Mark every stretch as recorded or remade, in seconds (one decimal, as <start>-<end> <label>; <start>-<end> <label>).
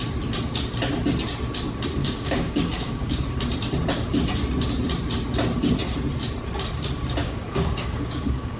0.0-2.0 recorded; 2.0-3.3 remade; 3.3-7.2 recorded; 7.2-8.6 remade